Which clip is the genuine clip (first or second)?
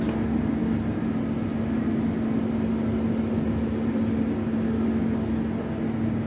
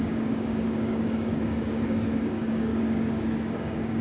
first